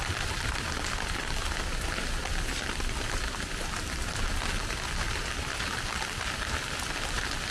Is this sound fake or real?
fake